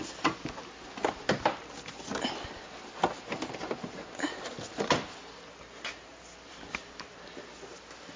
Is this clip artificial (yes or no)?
no